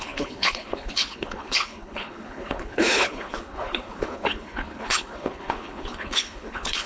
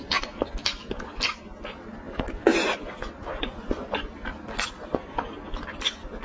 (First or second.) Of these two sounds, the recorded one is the second